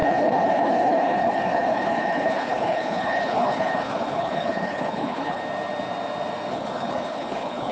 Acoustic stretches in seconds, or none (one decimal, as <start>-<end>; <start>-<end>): 5.4-6.5